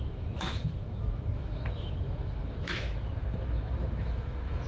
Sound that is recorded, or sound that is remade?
remade